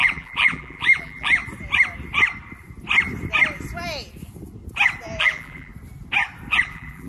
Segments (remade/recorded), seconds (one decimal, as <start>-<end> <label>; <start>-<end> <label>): 0.0-1.4 remade; 1.4-5.2 recorded; 5.2-5.7 remade; 5.7-6.6 recorded; 6.6-7.1 remade